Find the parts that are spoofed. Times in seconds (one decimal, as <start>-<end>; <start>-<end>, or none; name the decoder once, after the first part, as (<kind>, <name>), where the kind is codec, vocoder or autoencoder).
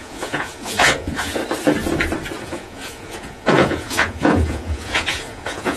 0.0-1.4 (vocoder, Vocos); 2.4-5.8